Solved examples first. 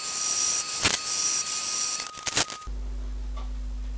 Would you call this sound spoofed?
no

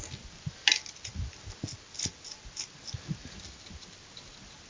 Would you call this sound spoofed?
no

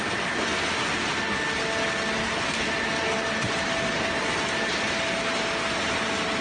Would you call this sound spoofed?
no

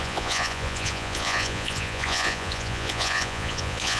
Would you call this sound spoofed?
yes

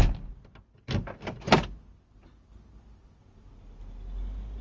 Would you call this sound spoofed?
no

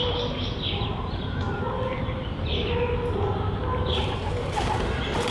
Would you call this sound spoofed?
no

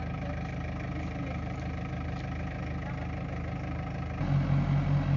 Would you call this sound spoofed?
no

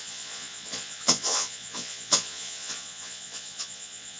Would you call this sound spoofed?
yes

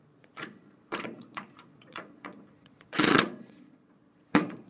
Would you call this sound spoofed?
yes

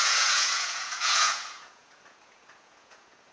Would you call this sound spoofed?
yes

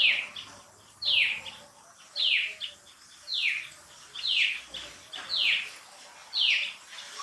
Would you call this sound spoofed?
no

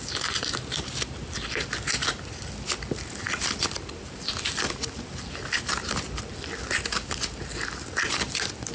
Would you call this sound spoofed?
no